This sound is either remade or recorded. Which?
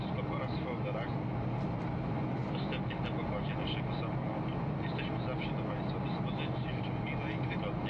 recorded